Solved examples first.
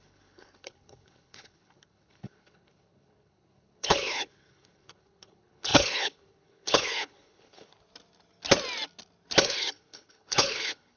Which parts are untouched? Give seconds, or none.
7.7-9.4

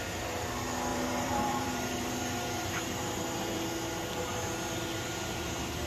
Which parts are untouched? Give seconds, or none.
0.0-0.9; 3.7-5.9

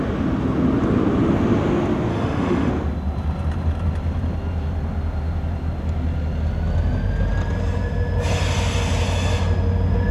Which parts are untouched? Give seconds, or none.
0.0-2.1; 2.7-10.1